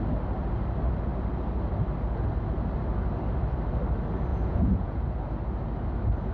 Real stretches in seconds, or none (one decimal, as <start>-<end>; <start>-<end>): 0.0-4.3; 5.0-6.3